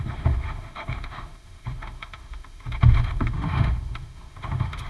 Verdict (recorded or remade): remade